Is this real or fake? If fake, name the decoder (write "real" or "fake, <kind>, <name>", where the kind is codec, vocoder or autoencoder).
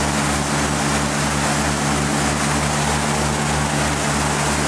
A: real